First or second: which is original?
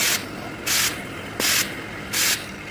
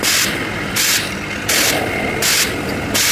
first